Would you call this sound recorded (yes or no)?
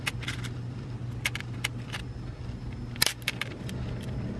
yes